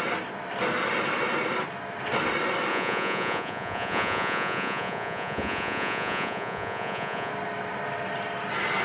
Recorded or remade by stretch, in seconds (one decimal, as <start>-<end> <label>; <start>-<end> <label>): 0.0-2.7 recorded; 2.7-7.3 remade; 7.3-8.8 recorded